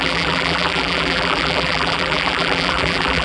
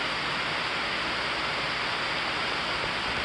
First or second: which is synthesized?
first